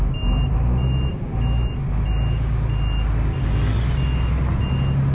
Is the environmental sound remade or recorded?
recorded